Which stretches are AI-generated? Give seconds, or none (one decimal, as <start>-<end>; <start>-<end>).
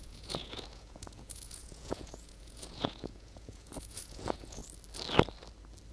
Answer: 0.0-4.6